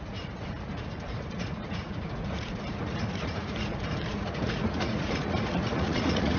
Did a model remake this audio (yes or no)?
yes